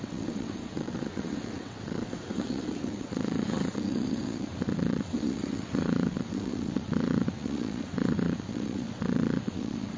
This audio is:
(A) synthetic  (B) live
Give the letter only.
A